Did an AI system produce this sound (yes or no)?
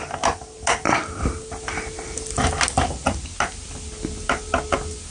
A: no